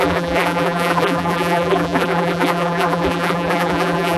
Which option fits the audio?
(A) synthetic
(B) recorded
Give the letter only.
A